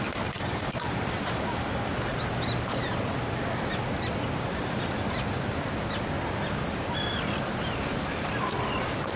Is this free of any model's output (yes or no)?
yes